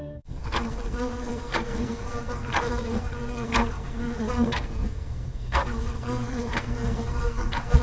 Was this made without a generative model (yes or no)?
no